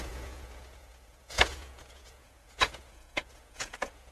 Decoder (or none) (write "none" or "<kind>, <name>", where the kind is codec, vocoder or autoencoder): vocoder, Vocos